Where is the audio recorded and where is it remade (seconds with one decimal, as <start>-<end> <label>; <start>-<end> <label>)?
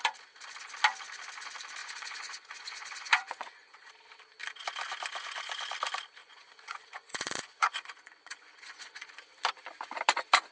0.0-1.8 recorded; 1.8-3.9 remade; 3.9-6.2 recorded; 6.2-9.3 remade; 9.3-10.5 recorded